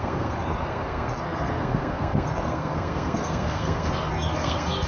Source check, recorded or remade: remade